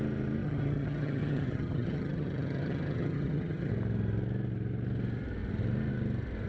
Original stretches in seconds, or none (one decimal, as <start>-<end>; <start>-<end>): 0.0-0.4; 3.7-6.5